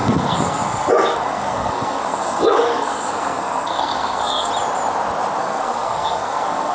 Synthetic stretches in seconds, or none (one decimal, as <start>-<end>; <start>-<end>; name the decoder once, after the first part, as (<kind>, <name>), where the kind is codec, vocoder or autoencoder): 0.0-4.5 (codec, SNAC); 5.4-6.7

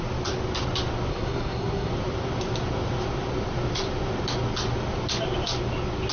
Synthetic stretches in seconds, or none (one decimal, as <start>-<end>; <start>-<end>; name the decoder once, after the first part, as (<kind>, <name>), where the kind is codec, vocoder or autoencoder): 1.1-1.9 (codec, SNAC)

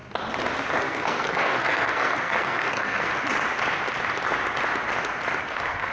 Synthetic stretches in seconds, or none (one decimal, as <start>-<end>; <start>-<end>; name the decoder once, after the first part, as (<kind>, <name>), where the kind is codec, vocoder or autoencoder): 0.8-3.1 (codec, SNAC); 5.4-5.9